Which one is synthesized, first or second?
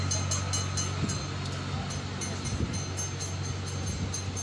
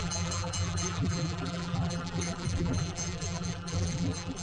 second